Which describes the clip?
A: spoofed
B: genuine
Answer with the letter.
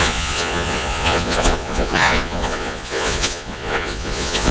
A